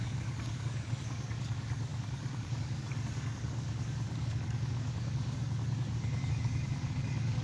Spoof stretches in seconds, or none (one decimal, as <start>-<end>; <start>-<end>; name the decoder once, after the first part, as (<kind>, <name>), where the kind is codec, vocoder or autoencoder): 0.0-7.4 (codec, DAC)